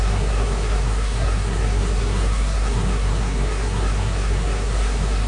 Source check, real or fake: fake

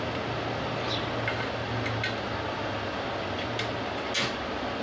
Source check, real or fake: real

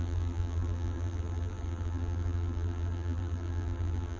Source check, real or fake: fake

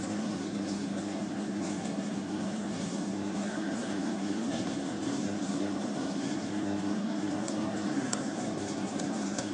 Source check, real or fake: fake